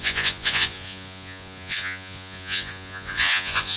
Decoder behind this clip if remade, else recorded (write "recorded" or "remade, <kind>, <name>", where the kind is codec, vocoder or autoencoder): remade, vocoder, Vocos